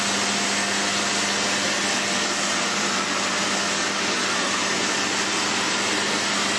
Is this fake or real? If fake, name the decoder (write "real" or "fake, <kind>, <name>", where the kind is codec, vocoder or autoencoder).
real